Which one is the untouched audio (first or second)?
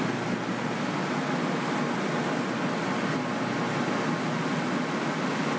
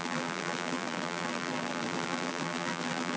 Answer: first